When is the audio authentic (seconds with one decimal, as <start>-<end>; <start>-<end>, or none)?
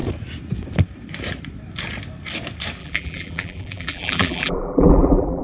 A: 0.0-2.8